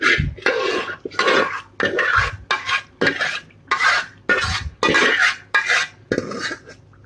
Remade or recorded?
recorded